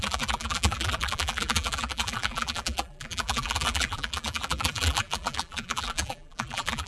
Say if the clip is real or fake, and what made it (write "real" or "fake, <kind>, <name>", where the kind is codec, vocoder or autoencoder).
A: fake, vocoder, BigVGAN v2